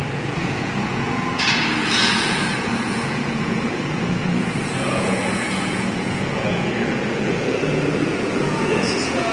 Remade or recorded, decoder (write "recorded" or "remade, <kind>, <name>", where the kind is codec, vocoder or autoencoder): remade, vocoder, Vocos